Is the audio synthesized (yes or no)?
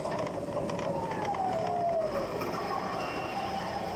no